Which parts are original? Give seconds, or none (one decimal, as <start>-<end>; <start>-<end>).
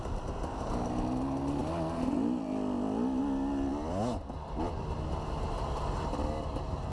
0.0-6.9